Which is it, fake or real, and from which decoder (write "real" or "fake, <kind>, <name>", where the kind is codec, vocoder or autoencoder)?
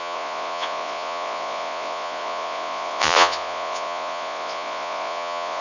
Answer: fake, vocoder, Vocos